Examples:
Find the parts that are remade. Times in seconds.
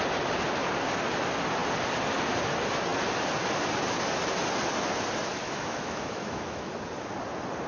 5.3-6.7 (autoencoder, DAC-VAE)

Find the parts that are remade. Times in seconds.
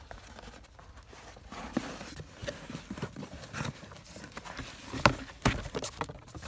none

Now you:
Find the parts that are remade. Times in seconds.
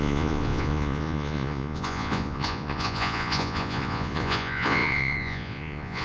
0.0-6.0 (vocoder, Vocos)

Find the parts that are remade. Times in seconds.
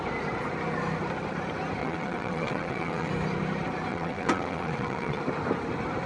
1.8-3.1 (vocoder, WaveNeXt); 3.9-5.2